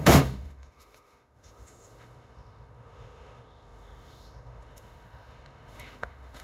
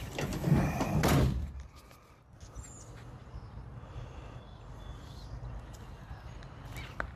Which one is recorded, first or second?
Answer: second